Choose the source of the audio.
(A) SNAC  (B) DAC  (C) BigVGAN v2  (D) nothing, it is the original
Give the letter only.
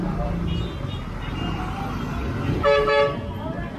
D